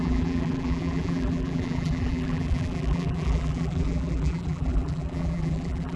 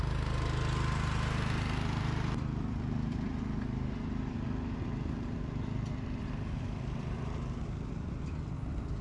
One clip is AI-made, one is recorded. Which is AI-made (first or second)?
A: first